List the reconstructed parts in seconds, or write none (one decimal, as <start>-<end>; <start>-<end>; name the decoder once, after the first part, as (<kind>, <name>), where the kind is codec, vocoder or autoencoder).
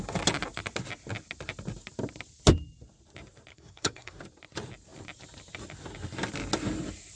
3.5-4.2 (codec, SNAC)